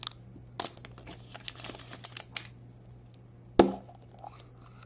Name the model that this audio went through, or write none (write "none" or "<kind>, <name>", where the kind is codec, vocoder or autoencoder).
none